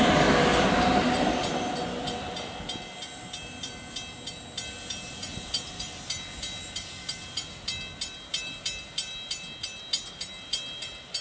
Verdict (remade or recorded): recorded